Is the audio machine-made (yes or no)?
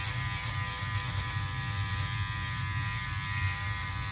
no